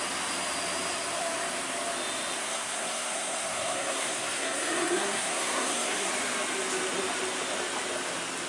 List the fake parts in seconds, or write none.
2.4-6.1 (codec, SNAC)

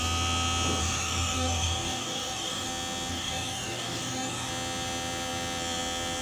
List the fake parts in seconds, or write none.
0.8-2.7 (codec, DAC); 3.1-4.5

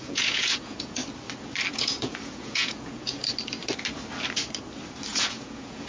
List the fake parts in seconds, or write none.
0.0-1.0 (vocoder, Vocos); 1.7-3.2; 5.1-5.9

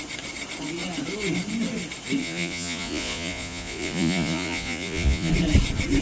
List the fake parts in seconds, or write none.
2.2-5.3 (vocoder, Vocos)